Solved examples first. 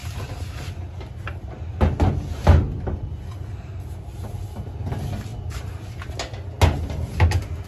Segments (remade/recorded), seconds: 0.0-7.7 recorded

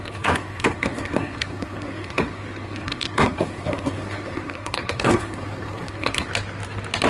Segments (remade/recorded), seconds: 0.0-6.3 remade; 6.3-7.1 recorded

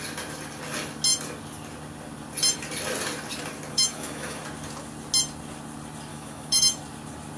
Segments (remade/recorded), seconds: 0.0-3.7 recorded; 3.7-4.4 remade; 4.4-6.1 recorded; 6.1-6.8 remade; 6.8-7.4 recorded

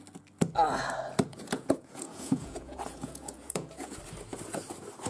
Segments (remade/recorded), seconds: 0.0-1.3 recorded; 1.3-3.9 remade; 3.9-5.1 recorded